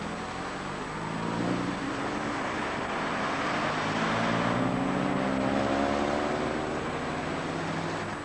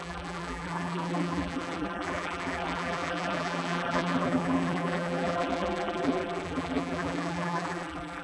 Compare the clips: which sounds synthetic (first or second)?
second